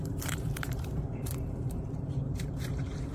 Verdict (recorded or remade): remade